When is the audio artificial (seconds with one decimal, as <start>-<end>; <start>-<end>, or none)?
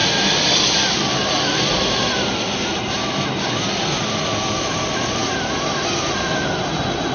none